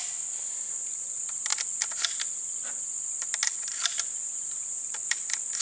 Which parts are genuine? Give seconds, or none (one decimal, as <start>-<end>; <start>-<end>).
0.0-5.6